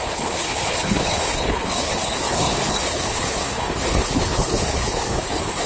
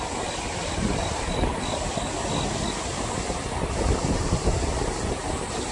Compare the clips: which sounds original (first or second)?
second